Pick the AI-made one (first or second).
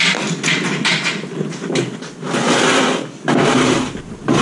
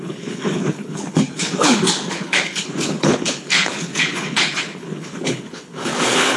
second